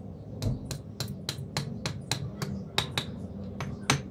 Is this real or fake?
real